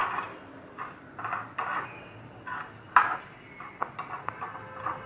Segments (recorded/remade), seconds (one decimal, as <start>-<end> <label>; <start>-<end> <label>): 0.0-5.1 recorded